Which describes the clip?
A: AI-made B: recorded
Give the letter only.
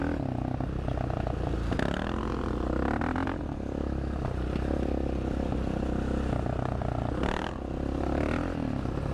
B